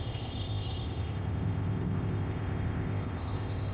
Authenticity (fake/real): fake